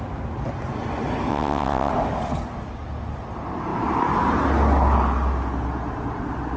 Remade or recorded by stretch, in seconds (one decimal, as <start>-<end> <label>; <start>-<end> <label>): 0.0-1.3 recorded; 1.3-1.9 remade; 1.9-6.6 recorded